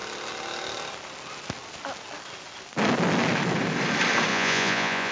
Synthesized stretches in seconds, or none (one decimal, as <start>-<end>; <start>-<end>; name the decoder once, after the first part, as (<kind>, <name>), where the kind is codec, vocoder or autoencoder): 4.3-5.1 (vocoder, Vocos)